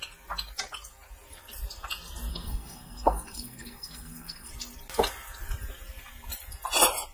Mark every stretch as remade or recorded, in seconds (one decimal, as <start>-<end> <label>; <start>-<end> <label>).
0.0-2.3 recorded; 2.3-4.5 remade; 4.5-7.1 recorded